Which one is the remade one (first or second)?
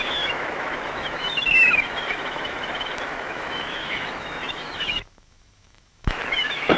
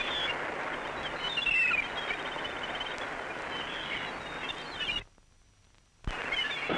first